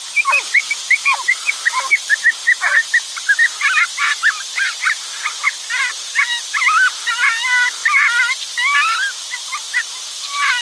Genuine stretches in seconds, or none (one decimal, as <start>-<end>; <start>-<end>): 0.0-10.6